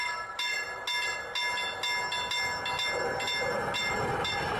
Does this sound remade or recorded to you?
recorded